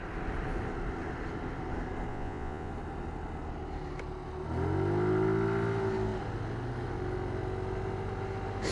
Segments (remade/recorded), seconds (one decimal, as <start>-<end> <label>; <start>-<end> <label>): 0.0-2.1 recorded; 2.1-2.7 remade; 2.7-8.7 recorded